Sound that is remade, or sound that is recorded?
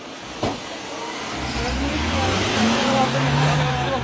recorded